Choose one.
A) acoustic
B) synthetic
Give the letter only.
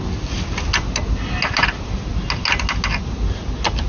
A